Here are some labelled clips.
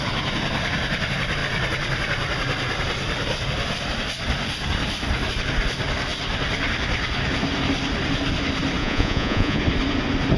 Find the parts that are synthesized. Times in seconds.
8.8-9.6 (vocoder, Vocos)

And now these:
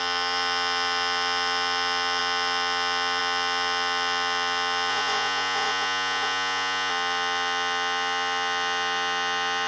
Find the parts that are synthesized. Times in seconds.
4.9-6.9 (vocoder, Vocos)

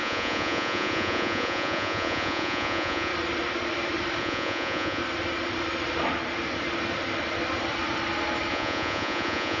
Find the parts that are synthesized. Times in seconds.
0.0-3.1 (vocoder, Vocos); 4.2-5.0; 8.5-9.6

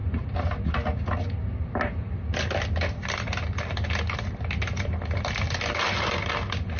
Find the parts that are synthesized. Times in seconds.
none

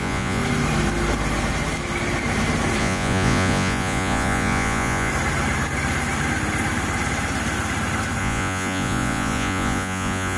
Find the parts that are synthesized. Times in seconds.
0.0-0.4 (vocoder, Vocos); 2.8-5.1; 8.2-10.4